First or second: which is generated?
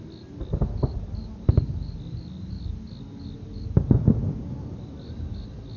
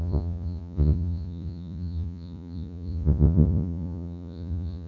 second